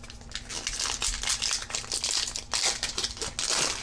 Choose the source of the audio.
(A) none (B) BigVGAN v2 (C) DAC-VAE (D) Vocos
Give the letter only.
A